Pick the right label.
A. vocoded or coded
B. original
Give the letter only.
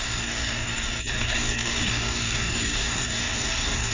A